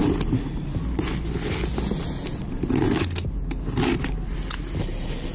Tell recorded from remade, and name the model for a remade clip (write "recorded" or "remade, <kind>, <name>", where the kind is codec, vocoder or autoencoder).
recorded